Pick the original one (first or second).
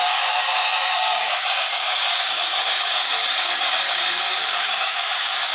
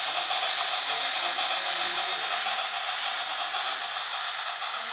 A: second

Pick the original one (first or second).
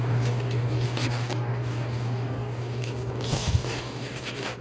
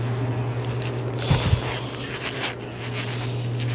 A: second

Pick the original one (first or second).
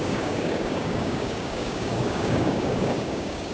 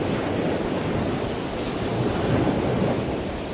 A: second